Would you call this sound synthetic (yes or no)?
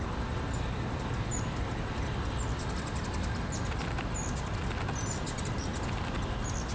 no